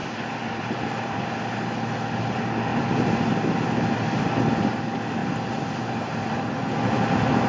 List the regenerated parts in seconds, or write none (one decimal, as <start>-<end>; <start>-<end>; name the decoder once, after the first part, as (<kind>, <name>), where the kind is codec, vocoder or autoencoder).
0.0-1.3 (vocoder, BigVGAN v2); 2.7-4.8; 5.2-7.5